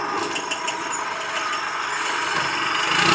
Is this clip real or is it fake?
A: real